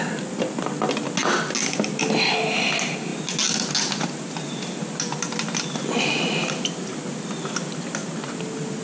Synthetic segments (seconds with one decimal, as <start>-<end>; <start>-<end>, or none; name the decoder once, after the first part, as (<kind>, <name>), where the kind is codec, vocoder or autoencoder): none